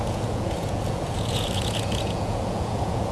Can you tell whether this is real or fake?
fake